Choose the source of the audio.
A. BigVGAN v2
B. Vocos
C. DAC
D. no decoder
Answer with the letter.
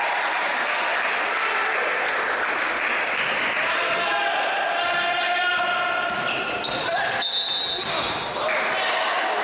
D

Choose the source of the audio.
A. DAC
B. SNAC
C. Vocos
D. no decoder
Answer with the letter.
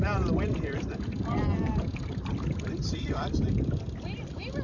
D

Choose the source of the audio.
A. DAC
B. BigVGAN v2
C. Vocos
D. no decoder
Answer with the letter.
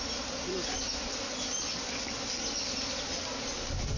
D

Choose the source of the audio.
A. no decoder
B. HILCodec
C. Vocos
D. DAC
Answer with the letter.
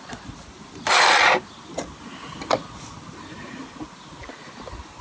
A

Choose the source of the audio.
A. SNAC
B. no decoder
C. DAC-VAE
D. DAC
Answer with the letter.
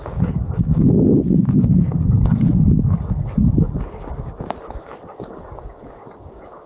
D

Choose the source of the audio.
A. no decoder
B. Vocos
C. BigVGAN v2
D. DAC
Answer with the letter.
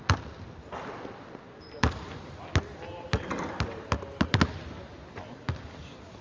A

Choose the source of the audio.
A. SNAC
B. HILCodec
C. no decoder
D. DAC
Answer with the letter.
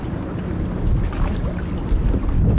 C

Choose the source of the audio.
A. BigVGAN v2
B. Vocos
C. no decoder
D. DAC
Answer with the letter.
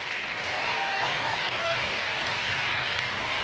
D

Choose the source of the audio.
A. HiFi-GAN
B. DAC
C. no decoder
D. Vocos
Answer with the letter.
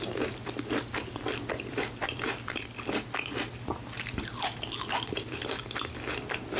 C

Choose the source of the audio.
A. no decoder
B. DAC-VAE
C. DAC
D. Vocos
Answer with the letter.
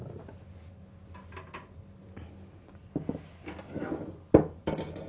A